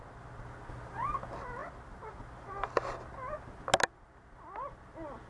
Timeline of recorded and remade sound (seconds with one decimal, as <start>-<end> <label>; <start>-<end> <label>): 0.0-5.3 recorded